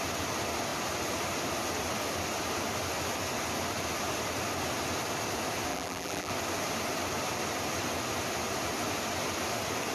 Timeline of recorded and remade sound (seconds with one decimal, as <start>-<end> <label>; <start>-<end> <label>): 0.0-5.7 recorded; 5.7-6.3 remade; 6.3-9.9 recorded